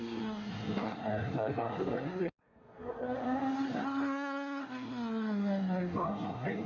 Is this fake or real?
fake